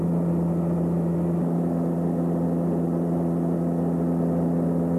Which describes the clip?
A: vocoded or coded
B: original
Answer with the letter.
B